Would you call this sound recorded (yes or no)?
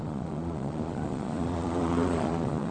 no